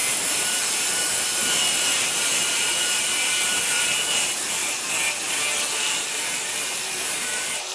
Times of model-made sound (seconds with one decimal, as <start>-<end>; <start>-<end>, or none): 0.0-4.6; 5.7-7.7